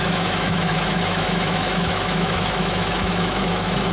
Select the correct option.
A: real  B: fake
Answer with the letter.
B